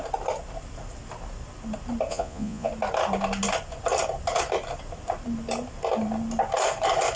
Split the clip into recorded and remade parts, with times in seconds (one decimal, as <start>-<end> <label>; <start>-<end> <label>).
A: 0.0-2.1 recorded; 2.1-2.7 remade; 2.7-7.2 recorded